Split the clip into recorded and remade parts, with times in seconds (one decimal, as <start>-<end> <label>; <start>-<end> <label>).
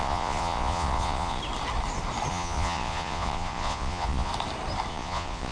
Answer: 0.0-1.4 remade; 1.4-2.3 recorded; 2.3-4.3 remade; 4.3-4.9 recorded; 4.9-5.5 remade